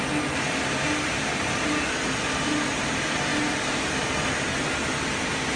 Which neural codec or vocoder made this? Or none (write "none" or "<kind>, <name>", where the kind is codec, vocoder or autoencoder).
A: none